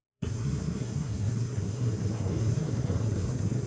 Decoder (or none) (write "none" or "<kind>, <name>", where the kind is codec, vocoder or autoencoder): codec, SNAC